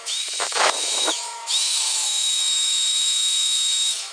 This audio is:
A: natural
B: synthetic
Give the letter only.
B